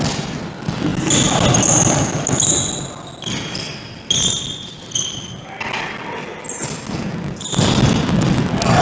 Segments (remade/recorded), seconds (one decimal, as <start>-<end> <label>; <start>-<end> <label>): 0.0-8.8 recorded